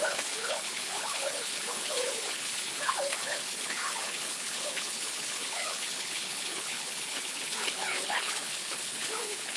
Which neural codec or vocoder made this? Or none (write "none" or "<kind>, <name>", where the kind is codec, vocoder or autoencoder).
codec, HILCodec